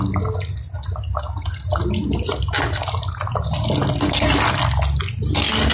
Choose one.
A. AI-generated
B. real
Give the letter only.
B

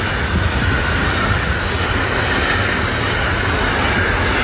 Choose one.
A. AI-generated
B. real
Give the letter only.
B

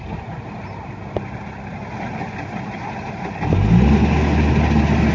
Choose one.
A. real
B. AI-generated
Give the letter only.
A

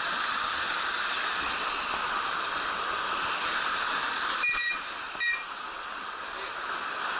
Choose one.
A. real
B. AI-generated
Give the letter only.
A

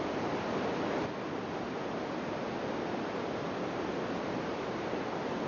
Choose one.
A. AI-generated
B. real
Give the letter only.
B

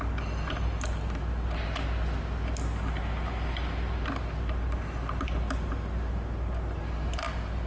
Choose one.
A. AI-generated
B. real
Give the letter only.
B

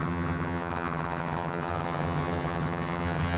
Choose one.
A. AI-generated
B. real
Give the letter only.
A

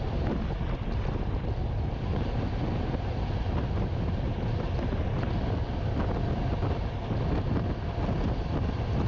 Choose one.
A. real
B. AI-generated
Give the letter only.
A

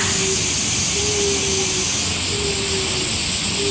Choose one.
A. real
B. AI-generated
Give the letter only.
A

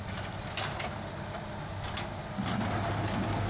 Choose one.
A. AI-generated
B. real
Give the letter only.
B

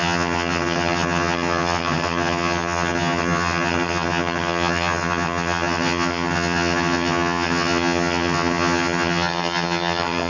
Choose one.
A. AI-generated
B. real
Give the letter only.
A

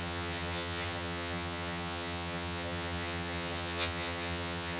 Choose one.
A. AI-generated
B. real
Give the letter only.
A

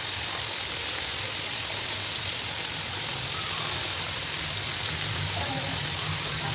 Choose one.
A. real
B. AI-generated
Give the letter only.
A